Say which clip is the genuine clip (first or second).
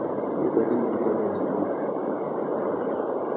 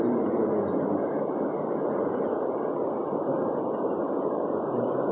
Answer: second